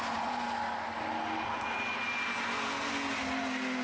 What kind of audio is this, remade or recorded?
recorded